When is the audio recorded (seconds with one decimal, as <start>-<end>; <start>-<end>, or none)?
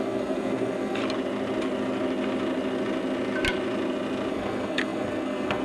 1.0-4.3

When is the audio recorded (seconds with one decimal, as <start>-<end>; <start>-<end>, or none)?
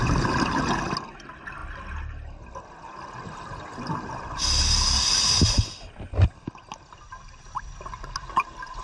0.0-8.8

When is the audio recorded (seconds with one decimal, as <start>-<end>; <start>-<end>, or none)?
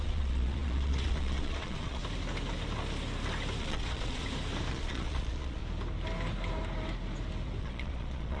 2.0-3.6; 4.2-4.7; 5.6-7.6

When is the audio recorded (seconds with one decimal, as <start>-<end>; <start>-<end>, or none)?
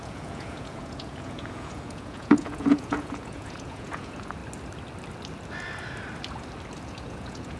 4.4-6.9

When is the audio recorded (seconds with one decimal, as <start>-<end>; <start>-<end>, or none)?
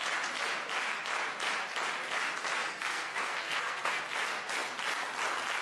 0.0-2.6; 4.0-5.6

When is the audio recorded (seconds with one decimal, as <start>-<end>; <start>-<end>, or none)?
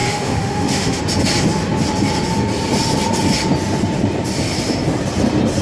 1.0-5.6